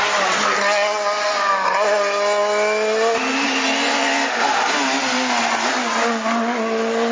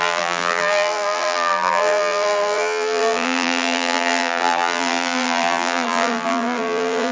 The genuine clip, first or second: first